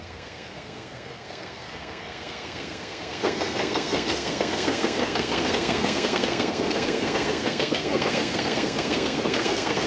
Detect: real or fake fake